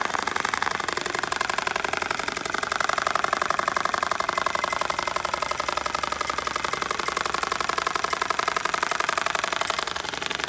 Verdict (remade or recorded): recorded